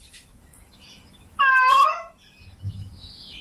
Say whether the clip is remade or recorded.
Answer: remade